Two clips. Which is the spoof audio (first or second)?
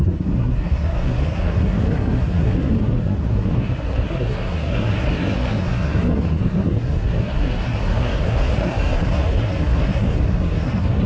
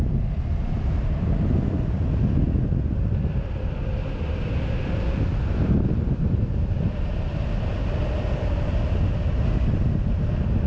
first